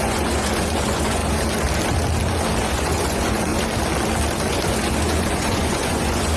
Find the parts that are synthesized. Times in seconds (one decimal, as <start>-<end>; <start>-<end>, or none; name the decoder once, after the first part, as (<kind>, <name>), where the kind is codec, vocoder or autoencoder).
0.0-1.2 (vocoder, Vocos); 2.6-3.5; 4.5-6.4